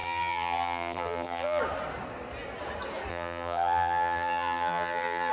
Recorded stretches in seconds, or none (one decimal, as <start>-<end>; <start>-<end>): 1.6-3.1